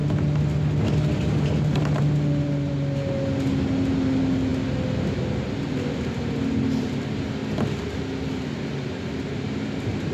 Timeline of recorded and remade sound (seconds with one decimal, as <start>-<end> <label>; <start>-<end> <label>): 0.0-10.1 recorded